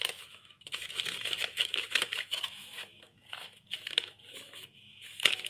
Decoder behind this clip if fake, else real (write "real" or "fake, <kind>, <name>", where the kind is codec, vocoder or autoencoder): fake, autoencoder, DAC-VAE